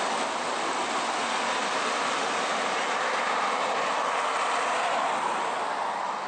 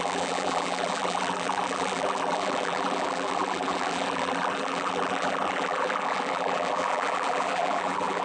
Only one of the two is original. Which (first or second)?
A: first